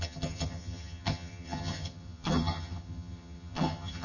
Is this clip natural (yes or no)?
no